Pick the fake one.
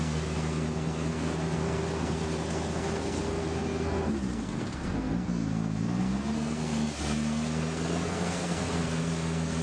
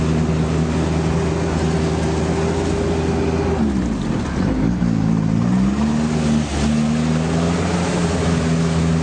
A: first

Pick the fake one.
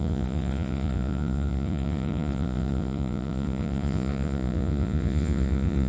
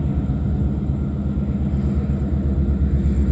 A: first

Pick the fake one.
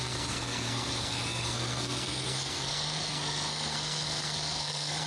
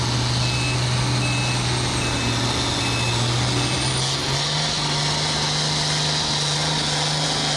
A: first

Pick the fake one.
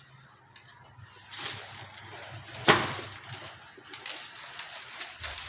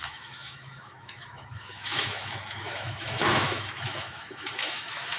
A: second